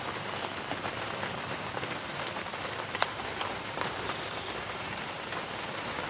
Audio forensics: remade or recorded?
remade